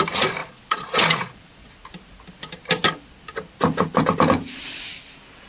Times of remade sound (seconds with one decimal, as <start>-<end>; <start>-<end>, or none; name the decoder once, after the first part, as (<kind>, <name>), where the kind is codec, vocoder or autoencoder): 0.4-1.7 (vocoder, Vocos)

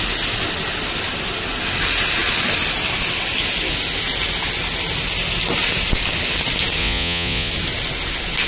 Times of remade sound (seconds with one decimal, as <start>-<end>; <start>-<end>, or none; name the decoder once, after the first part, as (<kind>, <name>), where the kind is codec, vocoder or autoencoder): 6.8-7.5 (vocoder, Vocos)